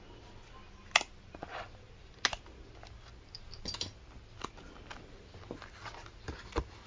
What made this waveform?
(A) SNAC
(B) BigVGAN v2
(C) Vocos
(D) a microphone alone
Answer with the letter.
D